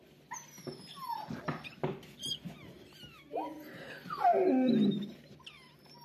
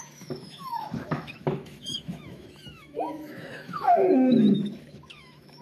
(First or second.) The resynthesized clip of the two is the second